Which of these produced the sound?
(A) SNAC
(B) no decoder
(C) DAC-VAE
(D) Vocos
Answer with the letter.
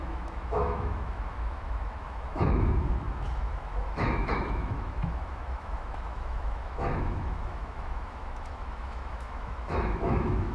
C